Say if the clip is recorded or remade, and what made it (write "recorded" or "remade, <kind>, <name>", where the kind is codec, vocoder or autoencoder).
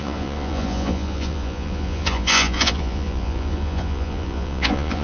remade, vocoder, Vocos